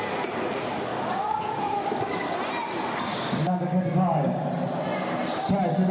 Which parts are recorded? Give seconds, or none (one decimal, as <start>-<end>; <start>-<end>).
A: 0.0-0.9; 2.3-3.1; 4.5-5.9